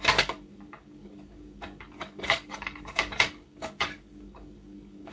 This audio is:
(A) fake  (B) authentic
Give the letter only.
A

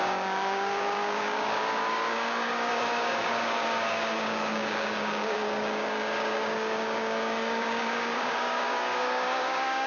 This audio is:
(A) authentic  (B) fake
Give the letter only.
B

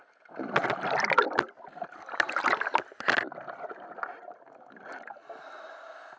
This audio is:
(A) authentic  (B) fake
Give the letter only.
A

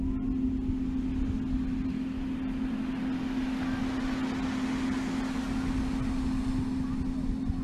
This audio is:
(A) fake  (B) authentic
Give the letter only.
B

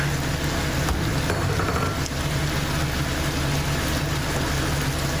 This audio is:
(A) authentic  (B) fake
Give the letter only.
A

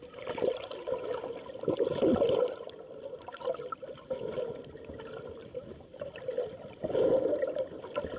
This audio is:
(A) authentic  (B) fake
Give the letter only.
A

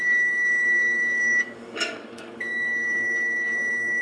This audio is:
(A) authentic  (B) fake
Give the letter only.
B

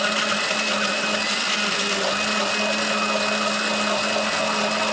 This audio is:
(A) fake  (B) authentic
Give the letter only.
B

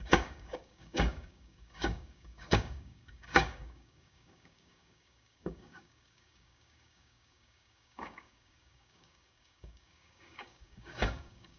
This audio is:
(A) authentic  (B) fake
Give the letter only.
B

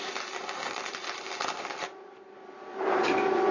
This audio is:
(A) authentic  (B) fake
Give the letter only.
A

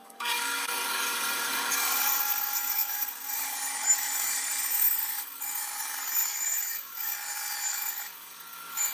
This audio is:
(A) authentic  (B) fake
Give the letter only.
B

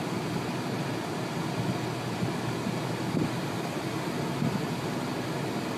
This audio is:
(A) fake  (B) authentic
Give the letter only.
B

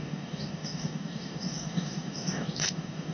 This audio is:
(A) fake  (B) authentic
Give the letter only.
A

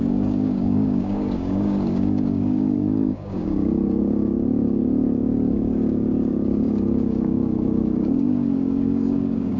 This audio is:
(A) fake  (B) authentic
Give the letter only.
A